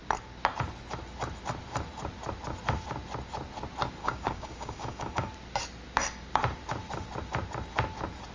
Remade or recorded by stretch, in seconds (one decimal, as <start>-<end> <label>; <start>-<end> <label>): 0.0-4.0 recorded; 4.0-5.3 remade; 5.3-8.3 recorded